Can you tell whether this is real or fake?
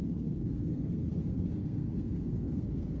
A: fake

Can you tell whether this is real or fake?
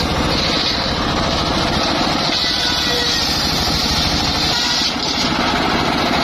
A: real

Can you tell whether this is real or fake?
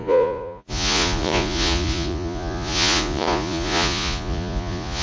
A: fake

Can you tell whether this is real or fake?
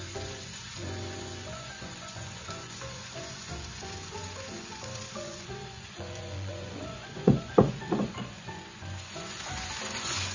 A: fake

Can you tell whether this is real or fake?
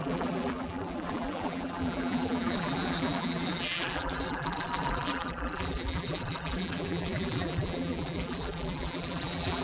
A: fake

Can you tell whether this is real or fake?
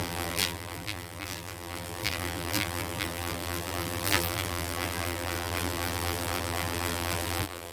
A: fake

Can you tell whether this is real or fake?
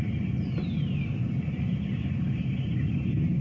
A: real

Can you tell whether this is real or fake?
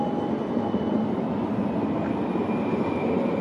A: real